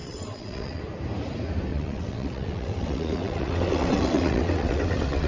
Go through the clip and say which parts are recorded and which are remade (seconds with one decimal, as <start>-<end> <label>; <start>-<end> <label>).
0.0-0.8 remade; 0.8-1.7 recorded; 1.7-5.3 remade